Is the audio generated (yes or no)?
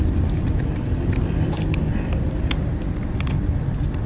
no